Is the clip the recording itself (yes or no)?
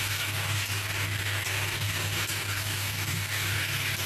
no